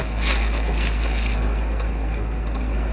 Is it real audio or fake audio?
fake